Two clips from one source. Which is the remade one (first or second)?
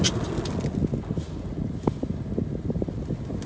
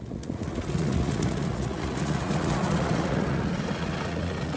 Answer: second